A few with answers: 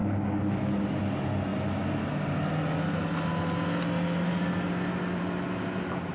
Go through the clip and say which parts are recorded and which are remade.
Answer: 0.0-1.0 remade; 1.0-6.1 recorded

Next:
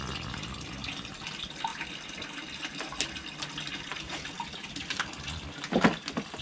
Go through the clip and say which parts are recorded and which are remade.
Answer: 0.0-6.4 recorded